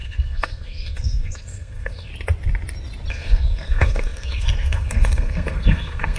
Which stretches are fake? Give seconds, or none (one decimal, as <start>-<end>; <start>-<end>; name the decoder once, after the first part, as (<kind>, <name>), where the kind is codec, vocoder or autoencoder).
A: 0.0-2.1 (codec, SNAC); 3.1-6.2